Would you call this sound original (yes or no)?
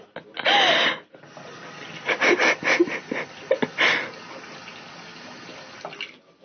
yes